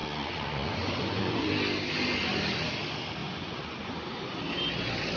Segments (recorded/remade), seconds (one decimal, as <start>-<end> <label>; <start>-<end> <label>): 0.0-1.5 remade; 1.5-3.2 recorded; 3.2-3.9 remade; 3.9-5.2 recorded